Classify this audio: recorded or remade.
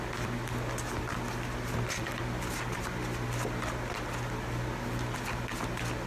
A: recorded